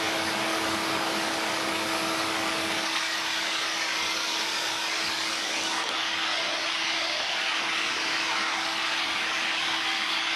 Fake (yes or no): yes